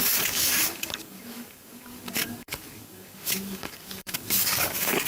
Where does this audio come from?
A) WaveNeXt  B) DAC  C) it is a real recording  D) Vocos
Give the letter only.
B